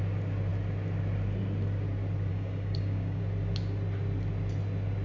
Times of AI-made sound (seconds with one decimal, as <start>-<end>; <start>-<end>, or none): 2.3-3.2